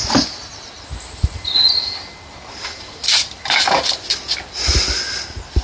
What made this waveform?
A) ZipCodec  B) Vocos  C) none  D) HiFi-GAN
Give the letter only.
C